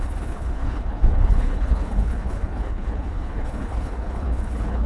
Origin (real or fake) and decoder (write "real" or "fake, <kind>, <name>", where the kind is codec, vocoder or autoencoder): fake, codec, HILCodec